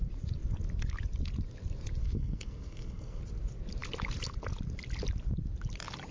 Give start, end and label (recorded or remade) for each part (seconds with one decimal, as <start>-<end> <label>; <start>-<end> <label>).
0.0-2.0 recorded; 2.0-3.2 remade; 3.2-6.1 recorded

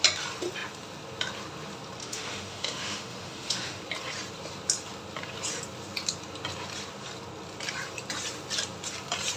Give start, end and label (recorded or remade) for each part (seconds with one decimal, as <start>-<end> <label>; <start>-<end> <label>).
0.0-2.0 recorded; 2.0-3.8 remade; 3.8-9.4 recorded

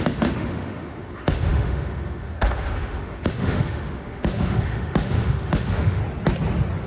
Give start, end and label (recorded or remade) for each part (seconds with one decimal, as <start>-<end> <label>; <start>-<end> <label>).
0.0-6.0 remade; 6.0-6.9 recorded

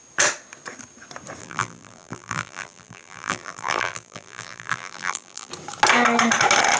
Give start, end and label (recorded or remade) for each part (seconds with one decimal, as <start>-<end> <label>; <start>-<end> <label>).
0.0-1.4 recorded; 1.4-5.5 remade; 5.5-6.8 recorded